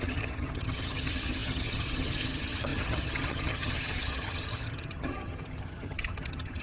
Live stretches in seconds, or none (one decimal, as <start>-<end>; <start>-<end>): none